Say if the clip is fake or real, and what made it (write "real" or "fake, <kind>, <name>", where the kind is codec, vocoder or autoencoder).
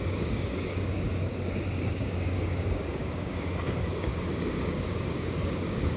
fake, codec, DAC